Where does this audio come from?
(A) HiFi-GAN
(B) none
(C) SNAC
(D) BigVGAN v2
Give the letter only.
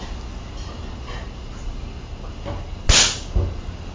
B